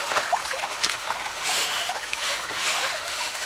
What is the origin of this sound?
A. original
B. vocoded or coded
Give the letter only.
B